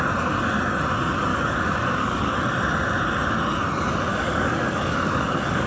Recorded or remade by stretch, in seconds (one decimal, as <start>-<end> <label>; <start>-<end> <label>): 0.0-1.3 recorded; 1.3-2.4 remade; 2.4-4.1 recorded; 4.1-5.7 remade